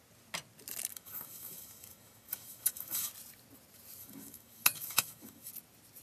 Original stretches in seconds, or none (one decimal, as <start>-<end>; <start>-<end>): 0.0-0.9; 3.1-4.0; 5.5-6.0